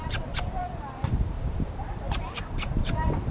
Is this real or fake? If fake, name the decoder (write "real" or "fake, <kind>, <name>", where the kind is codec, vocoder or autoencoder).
fake, vocoder, BigVGAN v2